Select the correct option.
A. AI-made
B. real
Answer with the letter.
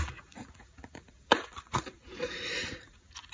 A